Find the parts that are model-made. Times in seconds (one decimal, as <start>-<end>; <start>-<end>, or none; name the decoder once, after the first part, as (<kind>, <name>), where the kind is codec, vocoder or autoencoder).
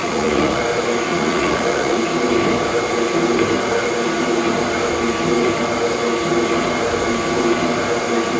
0.0-0.6 (vocoder, Vocos); 1.1-2.0